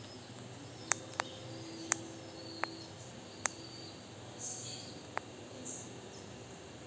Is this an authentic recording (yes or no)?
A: yes